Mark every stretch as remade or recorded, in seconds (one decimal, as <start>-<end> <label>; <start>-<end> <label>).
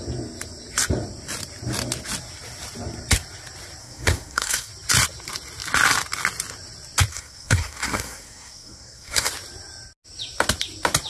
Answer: 0.0-3.8 recorded; 3.8-4.7 remade; 4.7-7.1 recorded; 7.1-9.3 remade; 9.3-11.1 recorded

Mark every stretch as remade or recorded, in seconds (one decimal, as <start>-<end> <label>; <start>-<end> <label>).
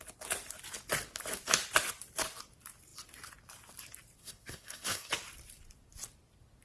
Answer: 0.0-4.2 recorded; 4.2-5.1 remade; 5.1-6.6 recorded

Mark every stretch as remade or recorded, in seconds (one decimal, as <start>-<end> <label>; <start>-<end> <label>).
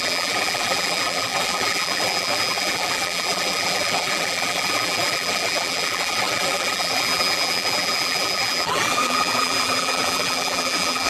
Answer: 0.0-11.1 remade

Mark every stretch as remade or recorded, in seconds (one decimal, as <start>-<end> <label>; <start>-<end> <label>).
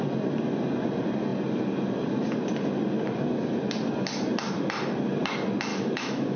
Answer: 0.0-5.7 recorded; 5.7-6.4 remade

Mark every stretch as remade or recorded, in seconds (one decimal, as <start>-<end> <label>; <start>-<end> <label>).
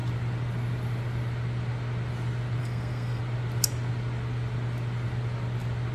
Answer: 0.0-2.6 recorded; 2.6-3.2 remade; 3.2-5.9 recorded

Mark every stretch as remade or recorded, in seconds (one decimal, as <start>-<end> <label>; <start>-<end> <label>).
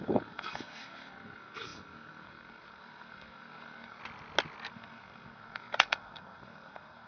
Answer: 0.0-4.0 remade; 4.0-4.7 recorded; 4.7-7.1 remade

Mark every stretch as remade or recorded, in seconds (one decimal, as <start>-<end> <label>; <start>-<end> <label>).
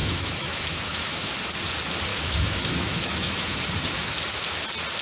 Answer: 0.0-1.3 remade; 1.3-2.1 recorded; 2.1-3.6 remade; 3.6-5.0 recorded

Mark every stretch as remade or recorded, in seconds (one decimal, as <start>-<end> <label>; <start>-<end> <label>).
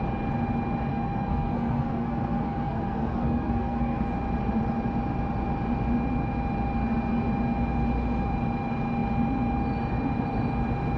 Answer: 0.0-0.9 recorded; 0.9-4.1 remade; 4.1-11.0 recorded